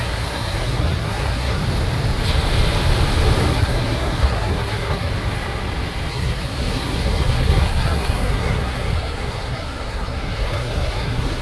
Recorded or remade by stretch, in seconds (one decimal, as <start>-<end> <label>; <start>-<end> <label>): 0.0-1.6 remade; 1.6-3.5 recorded; 3.5-5.1 remade; 5.1-6.1 recorded; 6.1-11.4 remade